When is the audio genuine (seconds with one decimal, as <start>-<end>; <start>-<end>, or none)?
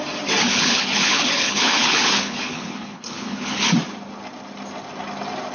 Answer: 0.0-0.4; 3.7-5.5